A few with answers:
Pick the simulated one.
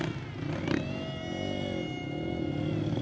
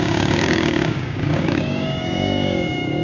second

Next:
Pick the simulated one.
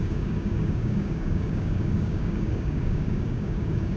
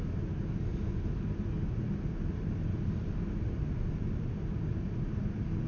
first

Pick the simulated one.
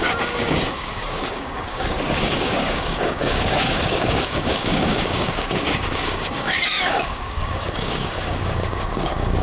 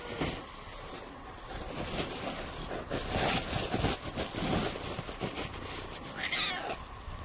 first